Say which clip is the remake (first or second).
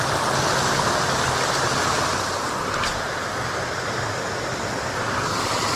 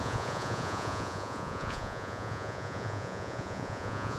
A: second